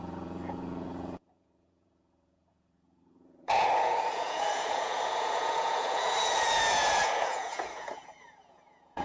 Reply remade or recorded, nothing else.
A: remade